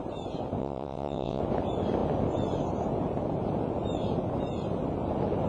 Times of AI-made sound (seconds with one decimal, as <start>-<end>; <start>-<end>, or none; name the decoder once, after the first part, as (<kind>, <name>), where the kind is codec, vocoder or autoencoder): 0.6-1.4 (vocoder, WaveNeXt)